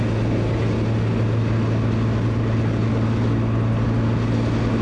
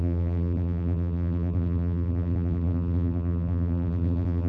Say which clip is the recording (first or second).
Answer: first